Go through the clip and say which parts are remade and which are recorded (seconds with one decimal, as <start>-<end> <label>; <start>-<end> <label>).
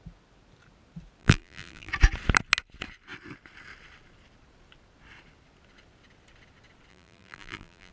0.0-1.2 recorded; 1.2-1.9 remade; 1.9-6.9 recorded; 6.9-7.9 remade